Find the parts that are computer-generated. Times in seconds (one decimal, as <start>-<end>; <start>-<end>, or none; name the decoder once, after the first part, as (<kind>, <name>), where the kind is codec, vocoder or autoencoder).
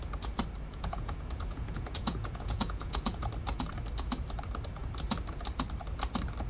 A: 0.7-3.3 (vocoder, Vocos)